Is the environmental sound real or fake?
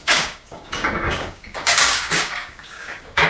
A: fake